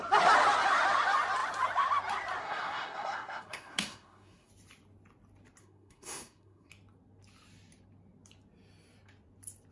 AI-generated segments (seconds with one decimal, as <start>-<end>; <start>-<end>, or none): 2.4-4.5; 5.6-6.7